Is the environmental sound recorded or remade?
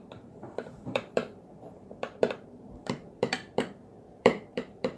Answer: remade